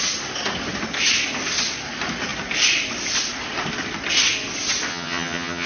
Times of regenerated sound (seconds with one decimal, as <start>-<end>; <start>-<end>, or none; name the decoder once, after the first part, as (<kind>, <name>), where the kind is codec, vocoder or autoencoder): 4.9-5.7 (vocoder, HiFi-GAN)